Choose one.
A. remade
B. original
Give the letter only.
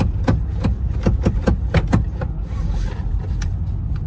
B